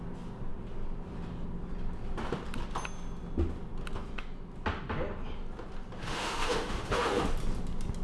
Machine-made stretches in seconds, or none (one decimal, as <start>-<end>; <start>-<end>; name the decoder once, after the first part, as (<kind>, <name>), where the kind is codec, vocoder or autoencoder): 6.0-7.2 (autoencoder, DAC-VAE)